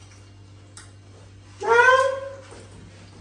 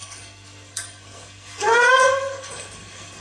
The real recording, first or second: first